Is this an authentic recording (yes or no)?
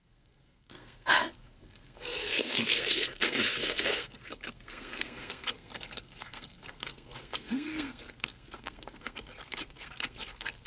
no